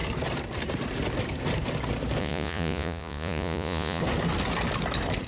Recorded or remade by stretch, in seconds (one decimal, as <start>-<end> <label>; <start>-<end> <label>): 0.0-2.2 recorded; 2.2-4.0 remade; 4.0-5.3 recorded